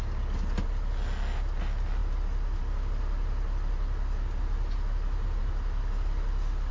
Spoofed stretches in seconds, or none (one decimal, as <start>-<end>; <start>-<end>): none